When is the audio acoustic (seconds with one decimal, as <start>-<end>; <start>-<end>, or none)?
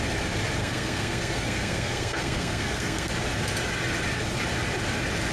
0.0-0.6; 3.1-5.3